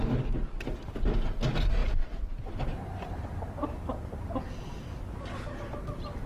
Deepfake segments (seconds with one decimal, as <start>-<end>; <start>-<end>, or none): none